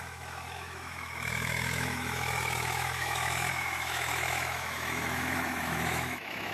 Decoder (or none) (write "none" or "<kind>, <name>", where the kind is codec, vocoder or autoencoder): autoencoder, DAC-VAE